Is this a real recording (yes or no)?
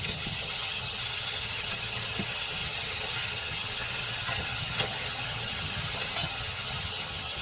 no